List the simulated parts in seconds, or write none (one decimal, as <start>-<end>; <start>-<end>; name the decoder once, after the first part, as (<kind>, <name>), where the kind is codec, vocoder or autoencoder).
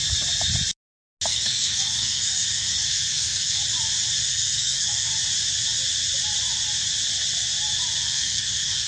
1.3-3.6 (codec, SNAC); 4.3-5.1; 8.0-8.9